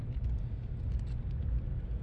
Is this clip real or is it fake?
real